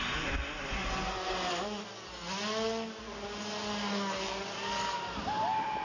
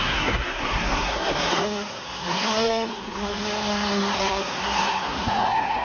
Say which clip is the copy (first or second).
second